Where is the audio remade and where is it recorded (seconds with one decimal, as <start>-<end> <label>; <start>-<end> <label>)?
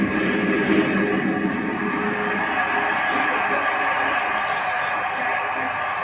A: 0.0-6.0 recorded